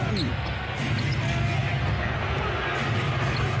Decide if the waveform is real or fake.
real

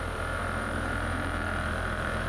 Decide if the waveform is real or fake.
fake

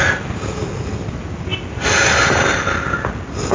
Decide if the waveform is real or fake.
real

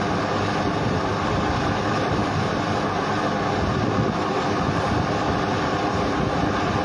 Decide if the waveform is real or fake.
real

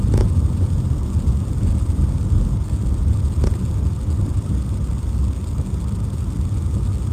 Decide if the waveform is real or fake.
real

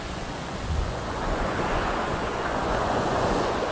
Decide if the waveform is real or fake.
fake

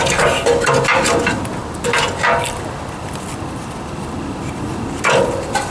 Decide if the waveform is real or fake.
real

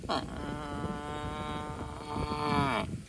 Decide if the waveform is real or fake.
real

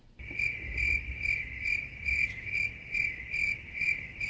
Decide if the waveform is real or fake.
real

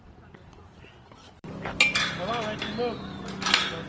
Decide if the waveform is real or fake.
fake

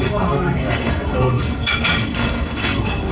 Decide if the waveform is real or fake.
fake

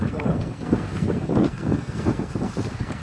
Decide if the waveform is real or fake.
fake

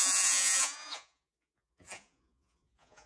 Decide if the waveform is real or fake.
fake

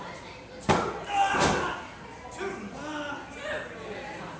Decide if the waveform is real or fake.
real